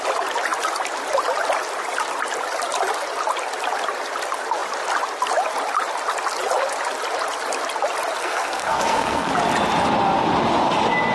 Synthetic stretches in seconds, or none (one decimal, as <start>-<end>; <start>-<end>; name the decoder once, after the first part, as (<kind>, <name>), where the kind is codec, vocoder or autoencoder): 8.2-9.3 (codec, SNAC)